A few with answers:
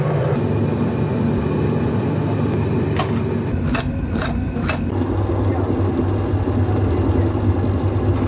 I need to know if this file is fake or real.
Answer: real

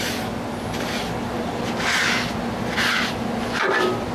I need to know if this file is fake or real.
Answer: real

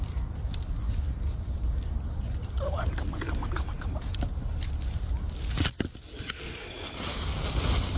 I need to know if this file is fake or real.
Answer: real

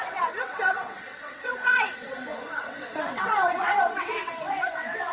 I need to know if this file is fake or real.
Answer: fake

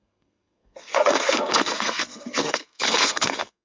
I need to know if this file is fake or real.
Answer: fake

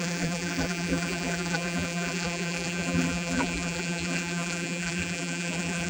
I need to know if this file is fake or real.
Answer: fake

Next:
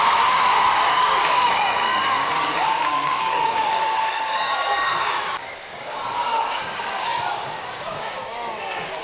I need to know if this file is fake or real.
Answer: fake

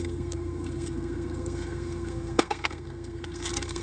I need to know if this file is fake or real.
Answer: fake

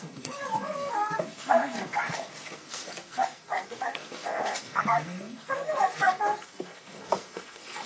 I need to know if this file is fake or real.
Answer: fake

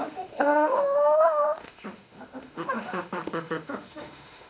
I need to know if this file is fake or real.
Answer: fake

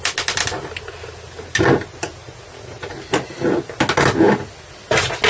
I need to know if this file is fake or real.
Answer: real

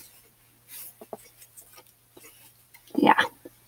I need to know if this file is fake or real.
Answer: real